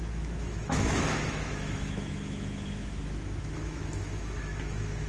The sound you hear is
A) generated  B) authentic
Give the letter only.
A